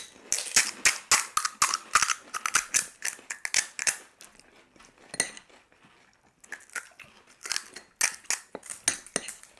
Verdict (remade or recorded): recorded